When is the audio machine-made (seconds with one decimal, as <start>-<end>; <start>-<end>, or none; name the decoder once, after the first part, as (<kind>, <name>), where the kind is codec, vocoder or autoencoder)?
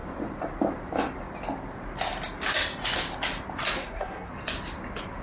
3.8-4.3 (codec, SNAC)